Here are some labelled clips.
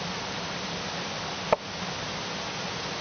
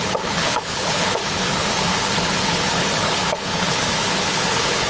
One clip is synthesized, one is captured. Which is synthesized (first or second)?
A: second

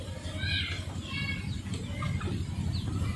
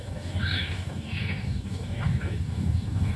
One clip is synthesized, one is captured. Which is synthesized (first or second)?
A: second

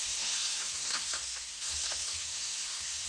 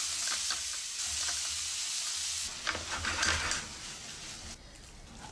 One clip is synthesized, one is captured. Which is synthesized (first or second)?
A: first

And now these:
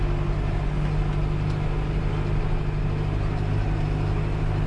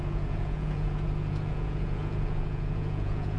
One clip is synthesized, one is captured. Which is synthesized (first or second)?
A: second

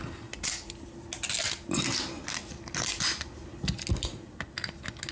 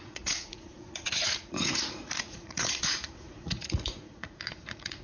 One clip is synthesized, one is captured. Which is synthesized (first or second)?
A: second